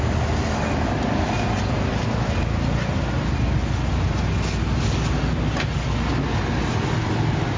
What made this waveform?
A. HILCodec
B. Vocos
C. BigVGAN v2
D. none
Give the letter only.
D